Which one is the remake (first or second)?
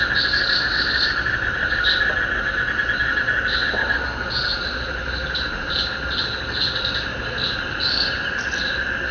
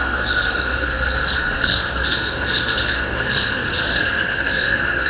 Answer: second